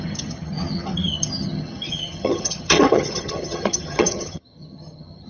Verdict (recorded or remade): remade